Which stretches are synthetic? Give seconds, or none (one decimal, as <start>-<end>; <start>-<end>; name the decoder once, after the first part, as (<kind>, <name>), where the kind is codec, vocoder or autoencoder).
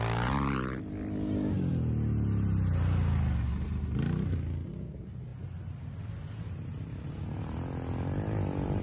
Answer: none